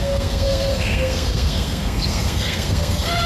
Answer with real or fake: fake